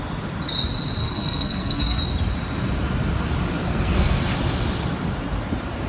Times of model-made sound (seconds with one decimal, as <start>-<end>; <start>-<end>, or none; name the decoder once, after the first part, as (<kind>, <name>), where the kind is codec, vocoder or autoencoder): 1.0-2.0 (codec, SNAC); 3.6-4.2